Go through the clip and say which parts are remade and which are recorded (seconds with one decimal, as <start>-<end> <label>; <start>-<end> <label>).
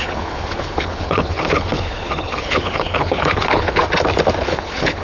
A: 0.0-3.8 remade; 3.8-4.4 recorded; 4.4-5.0 remade